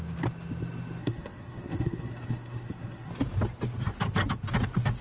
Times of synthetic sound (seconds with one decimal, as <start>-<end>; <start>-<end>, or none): 1.0-3.1